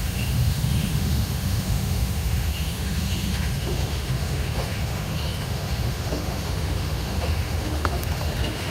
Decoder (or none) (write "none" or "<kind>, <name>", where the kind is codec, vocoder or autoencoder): autoencoder, DAC-VAE